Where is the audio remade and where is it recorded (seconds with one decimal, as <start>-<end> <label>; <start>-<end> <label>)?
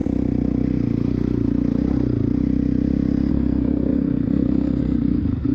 0.0-3.3 recorded; 3.3-5.5 remade